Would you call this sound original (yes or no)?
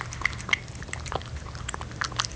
yes